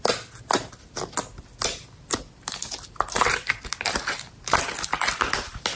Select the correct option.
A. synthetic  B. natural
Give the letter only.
B